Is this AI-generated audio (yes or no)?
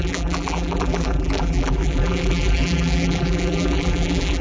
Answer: yes